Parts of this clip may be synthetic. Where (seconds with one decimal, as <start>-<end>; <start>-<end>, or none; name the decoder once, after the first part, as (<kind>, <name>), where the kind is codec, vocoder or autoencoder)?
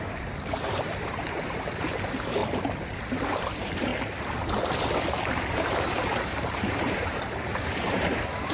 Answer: 0.0-2.4 (vocoder, BigVGAN v2); 3.4-3.9; 5.5-8.5